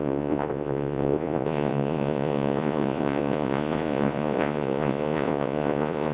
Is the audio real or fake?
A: fake